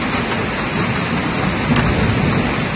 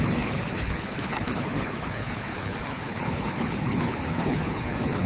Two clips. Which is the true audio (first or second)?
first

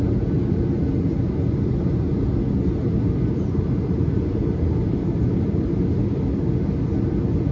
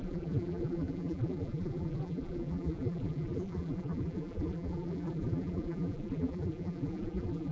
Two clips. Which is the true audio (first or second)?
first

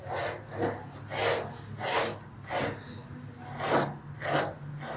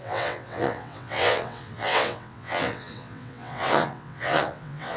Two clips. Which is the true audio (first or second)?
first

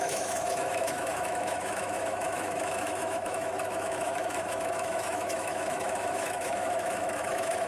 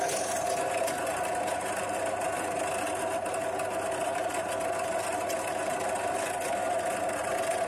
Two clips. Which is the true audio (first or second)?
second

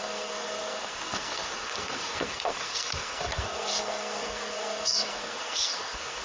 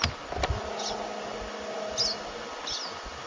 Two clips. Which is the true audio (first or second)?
second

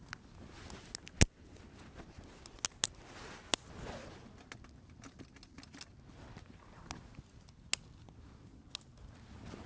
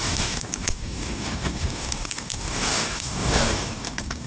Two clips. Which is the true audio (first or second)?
first